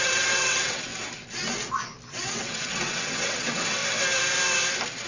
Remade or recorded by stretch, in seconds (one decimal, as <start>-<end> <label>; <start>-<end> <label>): 0.0-0.9 remade; 0.9-2.1 recorded; 2.1-3.8 remade; 3.8-5.1 recorded